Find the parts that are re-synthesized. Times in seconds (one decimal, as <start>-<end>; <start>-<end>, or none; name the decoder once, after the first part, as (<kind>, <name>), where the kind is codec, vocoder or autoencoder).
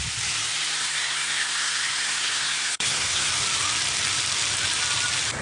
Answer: 0.8-3.3 (codec, SNAC)